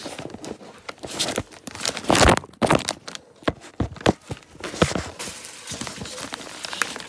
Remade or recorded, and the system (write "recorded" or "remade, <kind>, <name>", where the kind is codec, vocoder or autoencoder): recorded